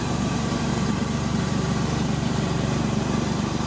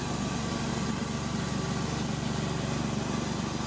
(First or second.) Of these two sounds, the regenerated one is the first